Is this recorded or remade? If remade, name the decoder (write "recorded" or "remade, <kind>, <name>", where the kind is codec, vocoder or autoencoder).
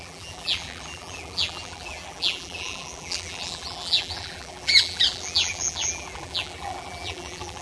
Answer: remade, vocoder, BigVGAN v2